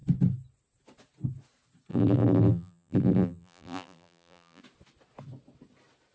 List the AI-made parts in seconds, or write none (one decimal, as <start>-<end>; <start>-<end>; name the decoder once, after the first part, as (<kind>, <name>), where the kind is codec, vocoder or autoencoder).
1.9-4.6 (vocoder, BigVGAN v2)